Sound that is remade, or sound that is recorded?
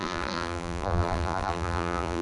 remade